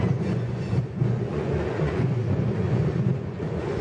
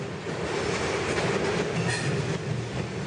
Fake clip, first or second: first